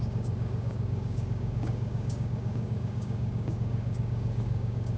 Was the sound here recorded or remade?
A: remade